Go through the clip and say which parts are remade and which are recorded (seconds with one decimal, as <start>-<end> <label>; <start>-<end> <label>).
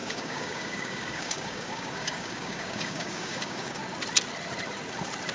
0.0-3.8 remade; 3.8-5.3 recorded